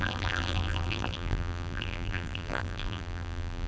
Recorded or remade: remade